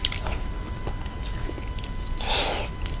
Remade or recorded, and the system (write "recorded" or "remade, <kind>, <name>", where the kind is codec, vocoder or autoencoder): recorded